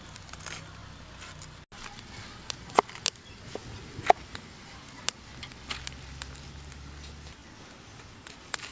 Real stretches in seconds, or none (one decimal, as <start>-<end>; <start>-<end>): 0.0-8.7